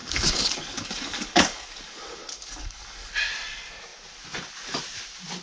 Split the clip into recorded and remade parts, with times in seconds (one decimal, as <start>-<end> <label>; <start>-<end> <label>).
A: 0.0-3.1 remade; 3.1-5.4 recorded